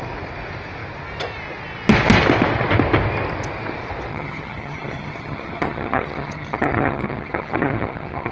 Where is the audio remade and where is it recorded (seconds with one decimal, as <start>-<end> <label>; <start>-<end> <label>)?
0.0-4.1 recorded; 4.1-8.3 remade